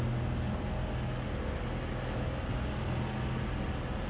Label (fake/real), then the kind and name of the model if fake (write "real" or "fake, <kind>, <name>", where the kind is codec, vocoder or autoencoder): real